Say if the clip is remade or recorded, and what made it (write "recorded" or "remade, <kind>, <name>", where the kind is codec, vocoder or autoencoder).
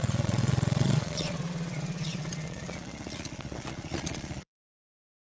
remade, vocoder, Vocos